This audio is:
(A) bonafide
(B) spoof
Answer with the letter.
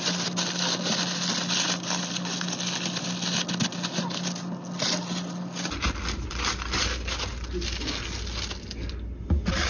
A